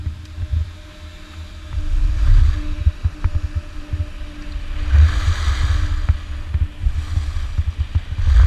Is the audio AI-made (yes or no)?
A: no